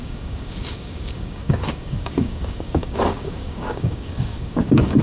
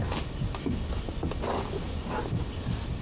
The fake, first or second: first